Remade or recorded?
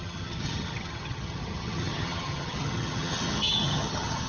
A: remade